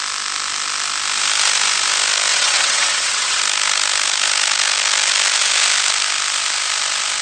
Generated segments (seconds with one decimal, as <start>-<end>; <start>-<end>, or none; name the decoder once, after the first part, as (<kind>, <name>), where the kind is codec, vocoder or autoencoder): 2.3-3.4 (vocoder, WaveNeXt)